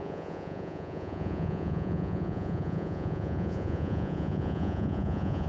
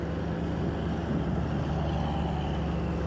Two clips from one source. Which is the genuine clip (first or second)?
second